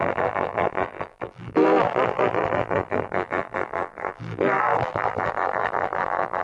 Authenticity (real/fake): fake